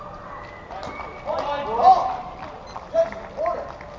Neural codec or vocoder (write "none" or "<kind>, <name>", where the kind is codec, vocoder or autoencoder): none